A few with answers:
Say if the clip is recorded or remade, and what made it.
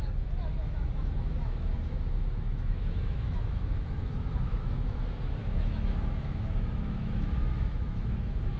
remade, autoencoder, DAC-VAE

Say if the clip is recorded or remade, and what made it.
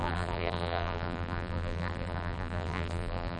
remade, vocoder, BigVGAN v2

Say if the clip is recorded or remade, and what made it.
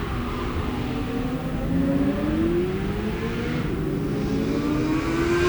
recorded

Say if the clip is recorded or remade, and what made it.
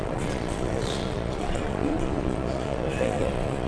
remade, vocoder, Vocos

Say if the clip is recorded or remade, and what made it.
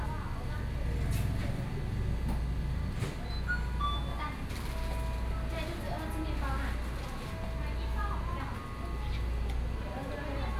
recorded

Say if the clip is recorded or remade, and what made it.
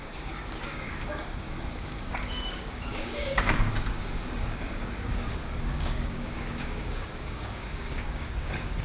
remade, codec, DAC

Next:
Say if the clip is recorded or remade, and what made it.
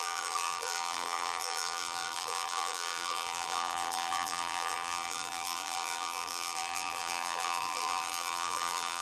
remade, vocoder, BigVGAN v2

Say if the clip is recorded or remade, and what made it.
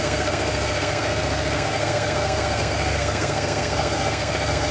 remade, codec, SNAC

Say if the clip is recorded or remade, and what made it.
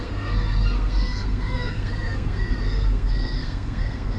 remade, codec, SNAC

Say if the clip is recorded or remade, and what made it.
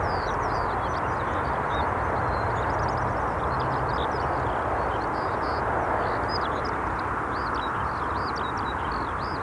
recorded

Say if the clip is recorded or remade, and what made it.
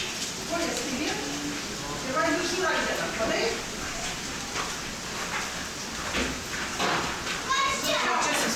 recorded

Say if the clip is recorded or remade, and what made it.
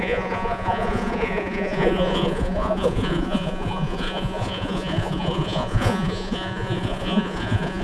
remade, vocoder, Vocos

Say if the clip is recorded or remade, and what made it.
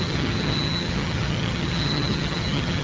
remade, vocoder, HiFi-GAN